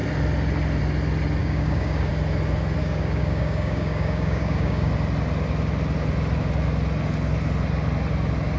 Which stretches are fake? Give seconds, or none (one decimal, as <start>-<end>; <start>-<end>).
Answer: 1.4-2.1; 2.8-4.9